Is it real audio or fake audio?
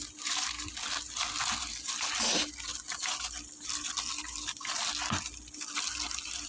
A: real